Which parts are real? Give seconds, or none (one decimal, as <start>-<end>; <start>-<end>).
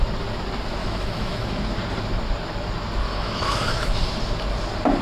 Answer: 0.0-0.8; 1.6-3.1; 4.0-5.0